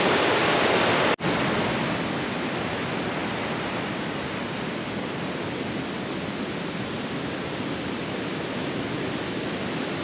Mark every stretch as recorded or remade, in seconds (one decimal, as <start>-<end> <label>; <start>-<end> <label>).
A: 0.0-10.0 recorded